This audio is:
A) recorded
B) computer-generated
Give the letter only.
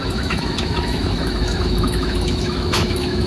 B